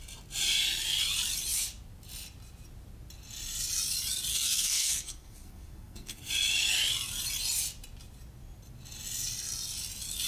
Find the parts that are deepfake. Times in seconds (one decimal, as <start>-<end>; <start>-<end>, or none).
4.3-6.3